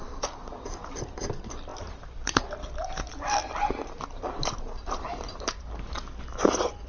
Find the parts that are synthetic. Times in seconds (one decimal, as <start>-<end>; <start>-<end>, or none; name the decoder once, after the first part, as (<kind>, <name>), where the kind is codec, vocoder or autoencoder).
0.0-1.0 (vocoder, BigVGAN v2); 1.7-2.4; 4.4-5.6